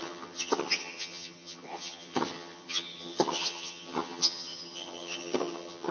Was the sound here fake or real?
fake